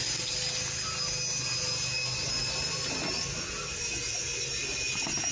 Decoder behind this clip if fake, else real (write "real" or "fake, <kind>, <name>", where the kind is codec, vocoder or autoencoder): real